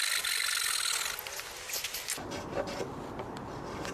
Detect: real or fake real